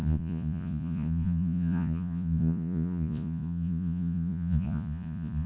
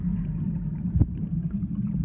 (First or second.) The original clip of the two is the second